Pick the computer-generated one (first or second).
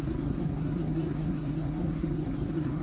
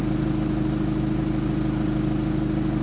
first